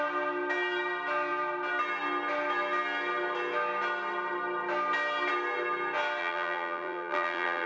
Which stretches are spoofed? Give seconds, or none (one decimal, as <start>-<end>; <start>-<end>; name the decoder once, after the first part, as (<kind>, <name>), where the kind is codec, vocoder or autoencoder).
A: 6.2-7.7 (vocoder, BigVGAN v2)